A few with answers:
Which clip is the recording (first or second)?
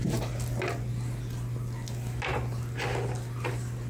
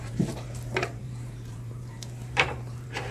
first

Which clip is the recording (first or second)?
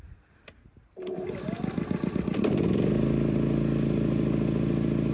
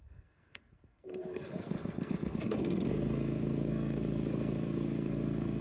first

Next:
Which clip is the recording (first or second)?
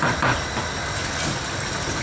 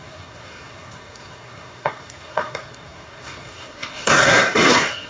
first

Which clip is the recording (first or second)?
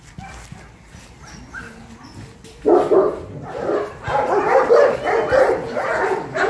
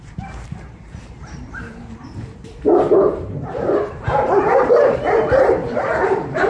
first